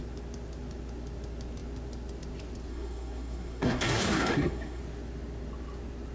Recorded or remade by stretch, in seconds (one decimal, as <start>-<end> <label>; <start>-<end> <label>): 0.0-2.7 recorded; 2.7-4.8 remade; 4.8-6.1 recorded